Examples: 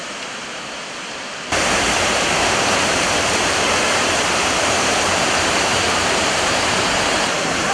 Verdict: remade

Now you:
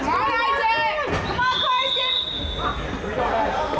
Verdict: recorded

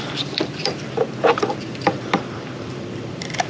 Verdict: remade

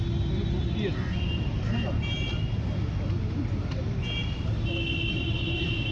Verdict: recorded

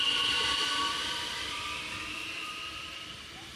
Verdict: remade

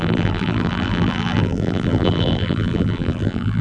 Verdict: remade